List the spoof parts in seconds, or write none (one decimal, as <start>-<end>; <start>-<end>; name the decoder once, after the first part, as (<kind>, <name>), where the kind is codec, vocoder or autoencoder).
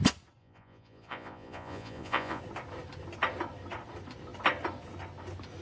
0.4-2.4 (vocoder, Vocos)